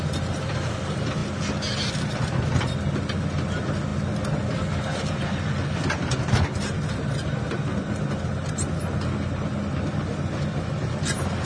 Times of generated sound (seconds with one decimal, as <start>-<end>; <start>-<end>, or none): none